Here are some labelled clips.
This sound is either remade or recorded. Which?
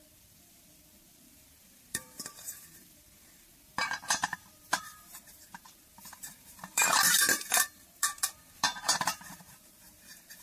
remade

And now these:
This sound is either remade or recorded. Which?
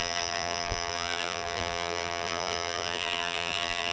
remade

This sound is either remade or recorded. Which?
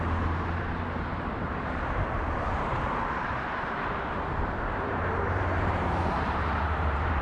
remade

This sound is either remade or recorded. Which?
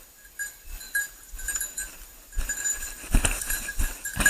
remade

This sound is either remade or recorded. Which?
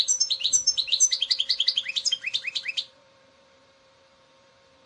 remade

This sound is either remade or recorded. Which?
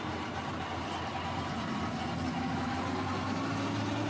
recorded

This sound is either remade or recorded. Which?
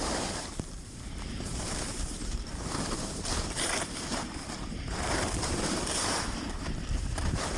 remade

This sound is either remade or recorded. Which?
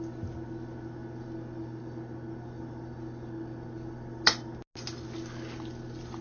recorded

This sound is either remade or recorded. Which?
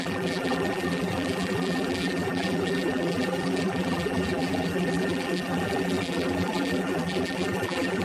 remade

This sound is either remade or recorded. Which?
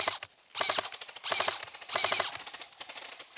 recorded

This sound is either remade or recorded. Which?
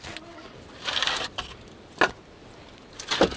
recorded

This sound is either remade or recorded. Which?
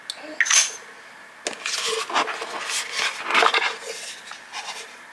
recorded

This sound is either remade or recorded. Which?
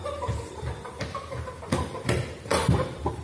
remade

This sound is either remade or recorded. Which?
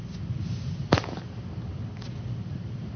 recorded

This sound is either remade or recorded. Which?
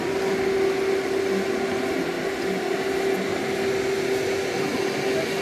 recorded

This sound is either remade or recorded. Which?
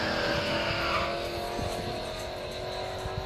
recorded